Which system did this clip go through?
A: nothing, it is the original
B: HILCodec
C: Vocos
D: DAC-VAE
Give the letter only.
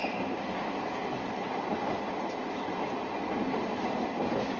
A